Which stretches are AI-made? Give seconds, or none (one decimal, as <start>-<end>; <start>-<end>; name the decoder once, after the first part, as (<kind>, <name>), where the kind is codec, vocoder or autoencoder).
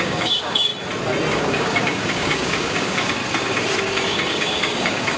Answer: 0.0-0.7 (codec, DAC); 1.3-3.2; 3.8-5.2